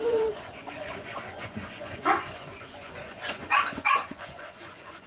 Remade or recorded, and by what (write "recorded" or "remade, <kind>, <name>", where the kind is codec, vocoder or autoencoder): remade, vocoder, Vocos